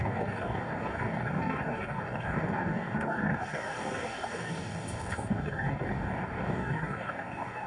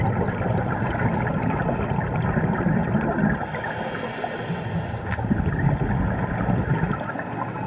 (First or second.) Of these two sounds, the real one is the second